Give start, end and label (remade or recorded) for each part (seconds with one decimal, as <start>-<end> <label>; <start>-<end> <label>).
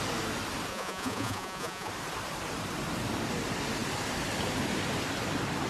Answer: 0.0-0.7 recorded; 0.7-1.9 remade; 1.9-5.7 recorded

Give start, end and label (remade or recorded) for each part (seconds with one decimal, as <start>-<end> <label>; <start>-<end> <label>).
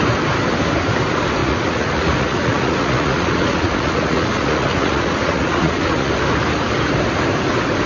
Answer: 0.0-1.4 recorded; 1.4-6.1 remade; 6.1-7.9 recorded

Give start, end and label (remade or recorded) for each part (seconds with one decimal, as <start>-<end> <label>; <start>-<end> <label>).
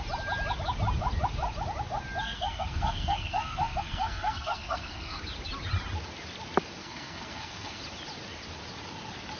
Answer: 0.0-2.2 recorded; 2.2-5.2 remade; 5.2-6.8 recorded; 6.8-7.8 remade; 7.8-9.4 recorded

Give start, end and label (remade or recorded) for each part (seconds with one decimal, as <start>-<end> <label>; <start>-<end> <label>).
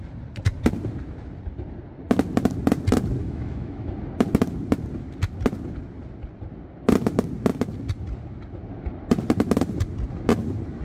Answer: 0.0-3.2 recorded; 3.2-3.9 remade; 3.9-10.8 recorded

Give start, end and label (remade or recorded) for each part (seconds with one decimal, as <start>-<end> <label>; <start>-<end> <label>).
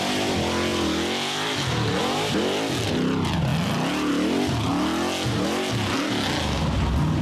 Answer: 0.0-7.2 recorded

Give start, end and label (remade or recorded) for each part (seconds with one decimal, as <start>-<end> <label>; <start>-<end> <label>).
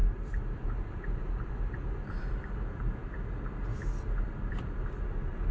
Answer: 0.0-3.3 remade; 3.3-5.5 recorded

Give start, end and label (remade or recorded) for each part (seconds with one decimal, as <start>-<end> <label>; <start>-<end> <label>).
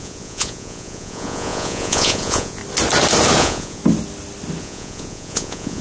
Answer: 0.0-2.6 remade; 2.6-3.4 recorded; 3.4-3.8 remade; 3.8-4.6 recorded; 4.6-5.8 remade